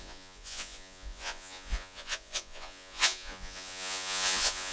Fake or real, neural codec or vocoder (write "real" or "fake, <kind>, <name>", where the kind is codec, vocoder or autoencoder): fake, vocoder, Vocos